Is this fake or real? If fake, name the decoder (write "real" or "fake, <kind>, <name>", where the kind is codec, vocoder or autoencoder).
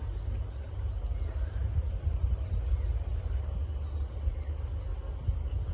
real